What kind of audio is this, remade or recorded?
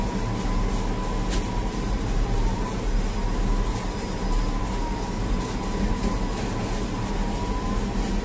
recorded